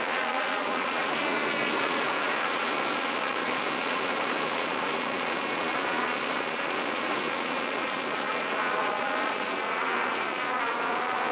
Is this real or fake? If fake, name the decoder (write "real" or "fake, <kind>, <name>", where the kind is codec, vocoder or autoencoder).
fake, vocoder, Vocos